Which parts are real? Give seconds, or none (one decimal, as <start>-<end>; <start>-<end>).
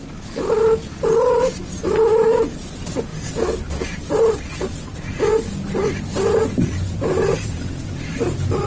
0.0-8.7